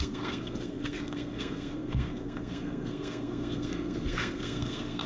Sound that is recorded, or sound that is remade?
remade